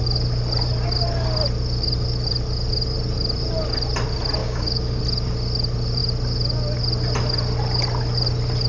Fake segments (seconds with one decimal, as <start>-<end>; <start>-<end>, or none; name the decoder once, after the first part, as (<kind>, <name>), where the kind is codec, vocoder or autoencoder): 4.4-5.0 (codec, DAC)